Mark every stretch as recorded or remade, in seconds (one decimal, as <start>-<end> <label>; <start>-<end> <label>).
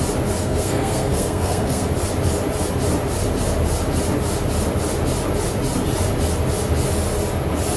0.0-0.4 recorded; 0.4-1.9 remade; 1.9-7.8 recorded